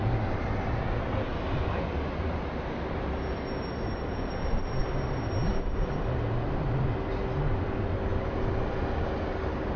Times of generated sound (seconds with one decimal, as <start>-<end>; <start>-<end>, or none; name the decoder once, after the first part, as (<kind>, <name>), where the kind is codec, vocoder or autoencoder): none